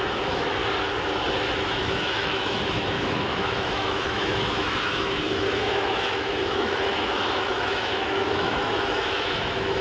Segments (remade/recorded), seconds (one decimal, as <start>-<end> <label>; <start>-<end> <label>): 0.0-0.6 remade; 0.6-1.5 recorded; 1.5-9.8 remade